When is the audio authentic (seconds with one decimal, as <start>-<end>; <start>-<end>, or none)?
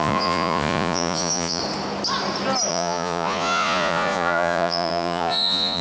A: 1.6-2.7